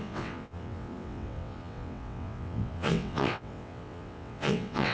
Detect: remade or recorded remade